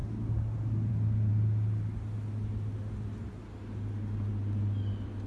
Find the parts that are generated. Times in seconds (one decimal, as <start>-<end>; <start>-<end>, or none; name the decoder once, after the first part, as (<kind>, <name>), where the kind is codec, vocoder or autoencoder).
none